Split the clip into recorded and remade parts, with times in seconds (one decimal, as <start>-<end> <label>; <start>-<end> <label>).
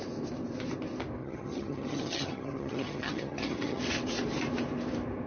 0.0-1.2 recorded; 1.2-3.8 remade; 3.8-5.3 recorded